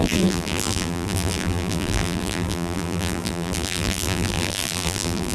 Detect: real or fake fake